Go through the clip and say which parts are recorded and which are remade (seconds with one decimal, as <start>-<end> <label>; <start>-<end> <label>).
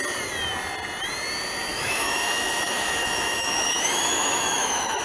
0.0-1.7 recorded; 1.7-5.0 remade